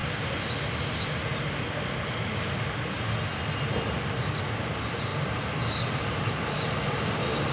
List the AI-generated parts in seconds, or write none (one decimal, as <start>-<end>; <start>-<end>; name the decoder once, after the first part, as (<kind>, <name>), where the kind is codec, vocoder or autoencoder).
none

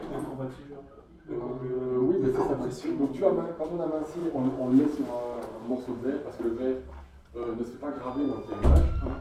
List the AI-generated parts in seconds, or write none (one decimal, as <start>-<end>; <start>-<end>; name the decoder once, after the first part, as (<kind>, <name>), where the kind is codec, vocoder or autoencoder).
none